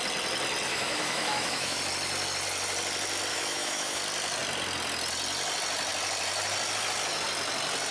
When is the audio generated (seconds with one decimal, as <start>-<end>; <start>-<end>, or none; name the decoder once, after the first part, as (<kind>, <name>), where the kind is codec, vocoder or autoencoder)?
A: 0.7-1.8 (autoencoder, DAC-VAE); 3.3-4.0